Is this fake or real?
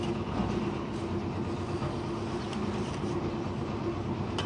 real